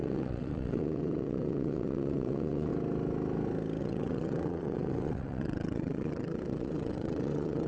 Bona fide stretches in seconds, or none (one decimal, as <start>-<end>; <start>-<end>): 2.7-3.8